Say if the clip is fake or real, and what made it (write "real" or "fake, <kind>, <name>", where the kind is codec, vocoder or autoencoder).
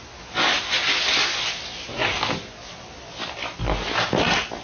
real